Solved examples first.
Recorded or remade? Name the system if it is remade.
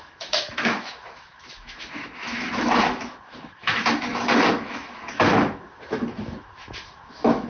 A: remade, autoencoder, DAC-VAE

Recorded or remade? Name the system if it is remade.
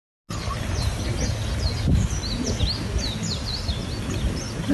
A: recorded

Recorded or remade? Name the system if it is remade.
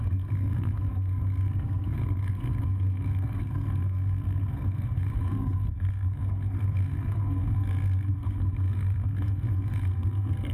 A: remade, codec, SNAC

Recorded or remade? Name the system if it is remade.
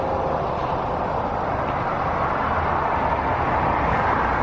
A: recorded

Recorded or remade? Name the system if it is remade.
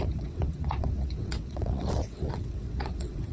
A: remade, vocoder, WaveNeXt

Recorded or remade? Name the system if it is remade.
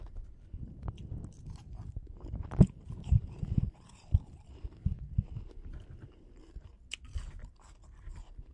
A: recorded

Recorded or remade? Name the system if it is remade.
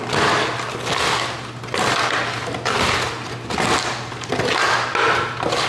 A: recorded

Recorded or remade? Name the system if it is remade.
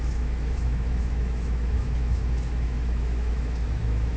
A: remade, autoencoder, DAC-VAE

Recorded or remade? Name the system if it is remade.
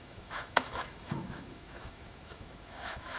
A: remade, autoencoder, DAC-VAE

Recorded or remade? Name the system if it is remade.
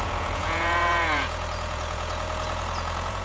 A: remade, vocoder, Vocos